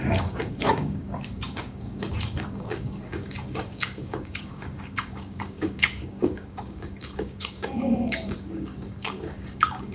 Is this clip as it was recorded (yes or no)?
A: no